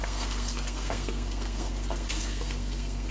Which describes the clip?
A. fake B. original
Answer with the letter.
A